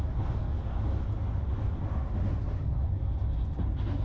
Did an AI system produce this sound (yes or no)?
no